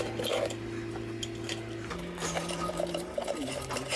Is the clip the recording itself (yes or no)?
yes